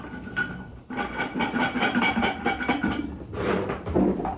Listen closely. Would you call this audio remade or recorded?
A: recorded